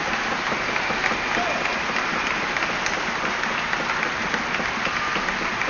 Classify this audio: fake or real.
real